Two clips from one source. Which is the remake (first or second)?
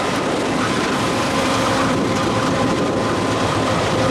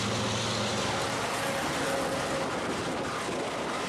first